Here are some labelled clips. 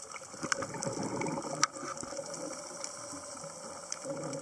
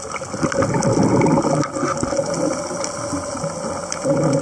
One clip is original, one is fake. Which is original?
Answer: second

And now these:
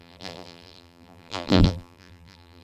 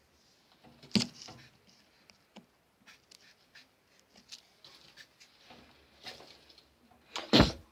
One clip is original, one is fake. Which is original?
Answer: second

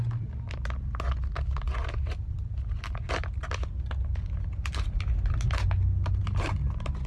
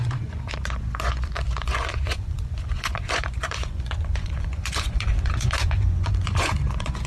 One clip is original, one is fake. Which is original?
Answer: first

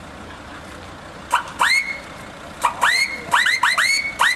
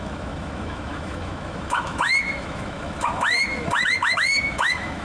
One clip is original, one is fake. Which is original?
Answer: first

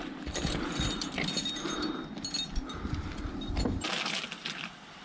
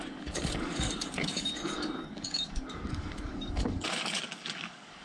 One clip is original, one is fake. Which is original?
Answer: first